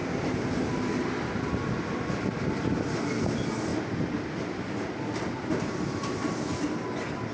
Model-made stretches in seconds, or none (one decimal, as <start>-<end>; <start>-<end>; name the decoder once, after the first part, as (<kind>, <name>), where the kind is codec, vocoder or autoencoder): none